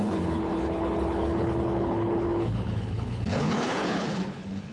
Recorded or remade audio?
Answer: remade